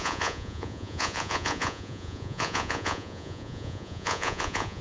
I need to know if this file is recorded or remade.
remade